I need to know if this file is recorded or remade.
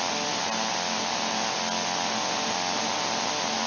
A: recorded